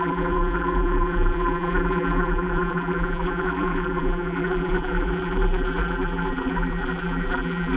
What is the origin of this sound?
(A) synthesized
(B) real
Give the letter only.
A